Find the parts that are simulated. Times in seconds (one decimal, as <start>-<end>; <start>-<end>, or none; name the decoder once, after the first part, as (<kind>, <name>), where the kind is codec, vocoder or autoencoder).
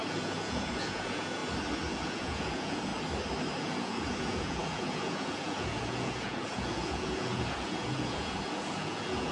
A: 0.0-1.4 (vocoder, Vocos); 1.9-2.9; 3.6-9.3